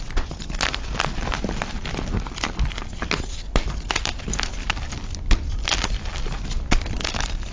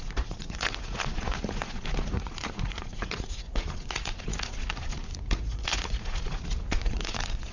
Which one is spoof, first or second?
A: second